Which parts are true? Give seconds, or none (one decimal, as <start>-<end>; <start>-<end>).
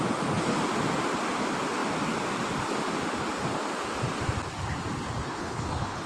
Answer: 0.0-5.2